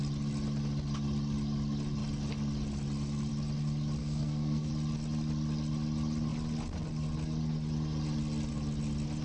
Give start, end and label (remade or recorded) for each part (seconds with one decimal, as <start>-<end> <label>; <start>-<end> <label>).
0.0-4.0 recorded; 4.0-4.7 remade; 4.7-9.2 recorded